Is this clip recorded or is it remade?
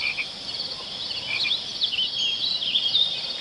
recorded